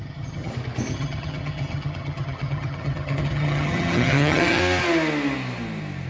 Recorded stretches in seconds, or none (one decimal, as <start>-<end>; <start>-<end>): 0.5-0.9; 4.6-6.1